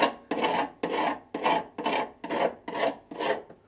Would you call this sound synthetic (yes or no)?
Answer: no